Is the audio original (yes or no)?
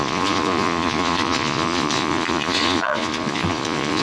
no